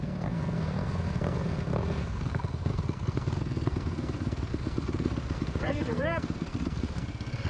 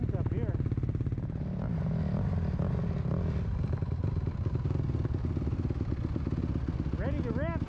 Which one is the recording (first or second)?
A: second